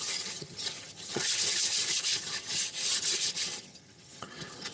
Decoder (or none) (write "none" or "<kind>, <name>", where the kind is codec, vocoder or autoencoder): vocoder, HiFi-GAN